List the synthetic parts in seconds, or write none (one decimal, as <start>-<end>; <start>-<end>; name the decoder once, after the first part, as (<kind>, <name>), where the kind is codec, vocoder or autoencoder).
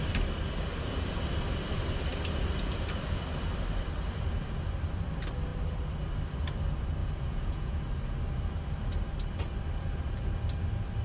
7.0-7.8 (vocoder, Vocos)